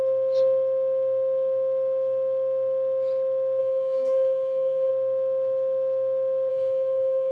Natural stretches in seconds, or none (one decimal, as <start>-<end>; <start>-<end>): 0.0-3.6; 4.9-6.5